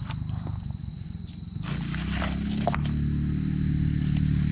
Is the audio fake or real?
real